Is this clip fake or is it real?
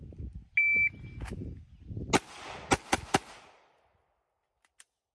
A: real